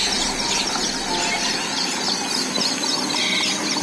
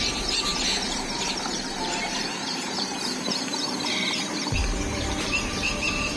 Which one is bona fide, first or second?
first